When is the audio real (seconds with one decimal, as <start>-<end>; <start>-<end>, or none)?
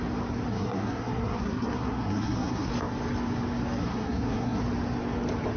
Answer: 0.0-0.5; 2.7-3.8; 4.6-5.6